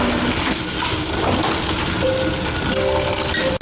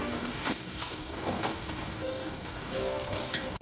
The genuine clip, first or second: first